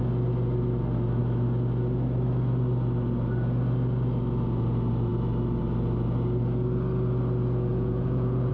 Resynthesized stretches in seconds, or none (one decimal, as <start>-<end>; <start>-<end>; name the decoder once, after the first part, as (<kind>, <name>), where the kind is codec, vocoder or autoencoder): 7.7-8.5 (vocoder, Vocos)

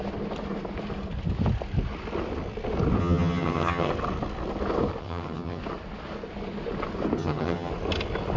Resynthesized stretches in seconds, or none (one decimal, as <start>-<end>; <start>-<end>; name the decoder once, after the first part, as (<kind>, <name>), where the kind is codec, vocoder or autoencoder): 3.0-3.9 (vocoder, HiFi-GAN); 5.0-5.6; 7.2-7.7

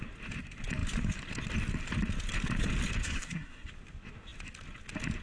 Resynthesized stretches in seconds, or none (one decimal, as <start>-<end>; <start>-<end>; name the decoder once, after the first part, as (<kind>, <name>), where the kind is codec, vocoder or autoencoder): 3.0-3.7 (codec, SNAC)

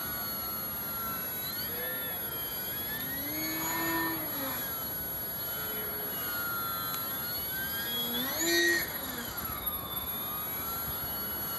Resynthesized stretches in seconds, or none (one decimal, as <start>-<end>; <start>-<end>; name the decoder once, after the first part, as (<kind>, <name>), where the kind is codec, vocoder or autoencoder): 8.6-10.1 (autoencoder, DAC-VAE)

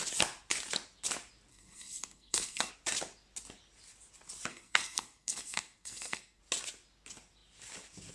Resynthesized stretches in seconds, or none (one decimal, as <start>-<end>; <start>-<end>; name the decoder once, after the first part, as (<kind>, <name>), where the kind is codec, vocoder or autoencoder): 1.5-2.7 (codec, SNAC); 4.5-6.4

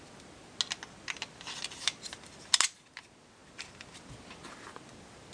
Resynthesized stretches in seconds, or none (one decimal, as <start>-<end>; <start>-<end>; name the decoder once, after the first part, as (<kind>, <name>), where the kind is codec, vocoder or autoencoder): none

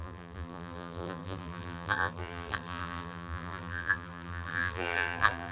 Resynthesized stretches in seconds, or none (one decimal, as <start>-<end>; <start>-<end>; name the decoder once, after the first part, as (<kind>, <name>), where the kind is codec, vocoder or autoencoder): 0.0-5.5 (vocoder, BigVGAN v2)